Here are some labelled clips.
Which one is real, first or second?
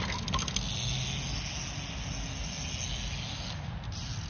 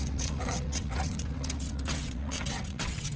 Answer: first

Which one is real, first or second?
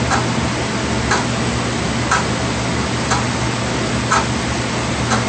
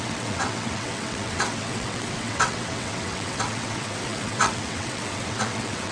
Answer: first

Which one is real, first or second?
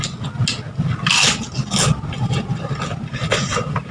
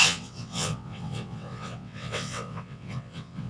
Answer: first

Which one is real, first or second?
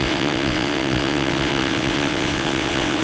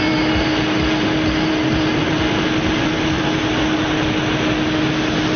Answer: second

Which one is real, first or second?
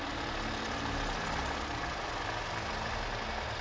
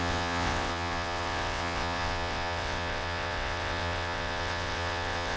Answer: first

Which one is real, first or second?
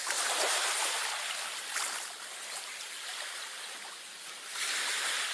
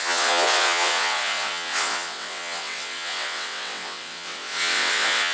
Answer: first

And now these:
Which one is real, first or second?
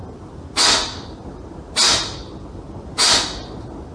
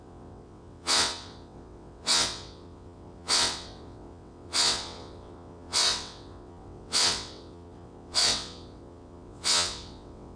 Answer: first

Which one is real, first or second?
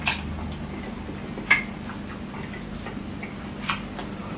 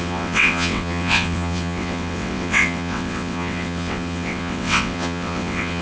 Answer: first